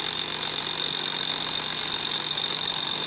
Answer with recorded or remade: recorded